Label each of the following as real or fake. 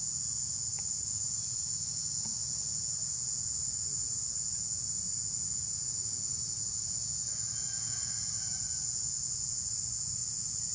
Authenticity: fake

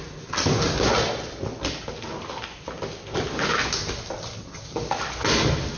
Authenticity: real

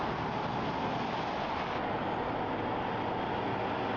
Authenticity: real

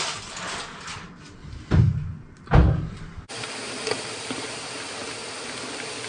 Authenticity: real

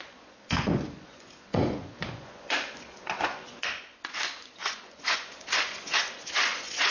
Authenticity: fake